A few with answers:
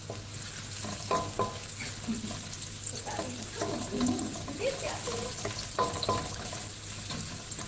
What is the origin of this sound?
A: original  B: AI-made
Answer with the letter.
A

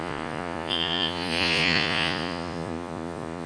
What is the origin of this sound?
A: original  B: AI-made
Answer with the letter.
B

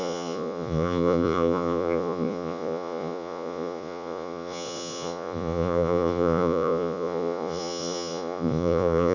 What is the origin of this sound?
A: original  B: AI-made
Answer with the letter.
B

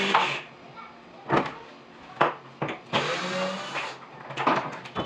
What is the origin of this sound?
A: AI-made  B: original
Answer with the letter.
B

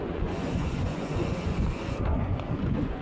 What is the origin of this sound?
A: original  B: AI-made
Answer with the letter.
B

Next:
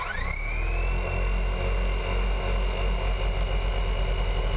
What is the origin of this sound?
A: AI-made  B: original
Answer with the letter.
B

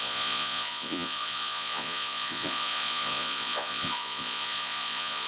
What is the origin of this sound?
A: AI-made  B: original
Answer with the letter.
A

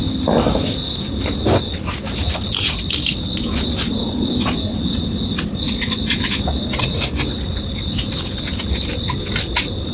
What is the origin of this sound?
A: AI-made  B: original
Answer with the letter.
B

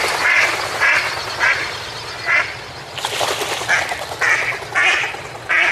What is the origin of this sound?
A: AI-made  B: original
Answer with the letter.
B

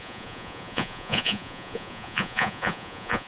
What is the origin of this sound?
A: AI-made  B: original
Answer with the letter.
A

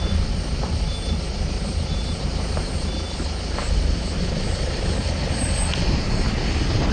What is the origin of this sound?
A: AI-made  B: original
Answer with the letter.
B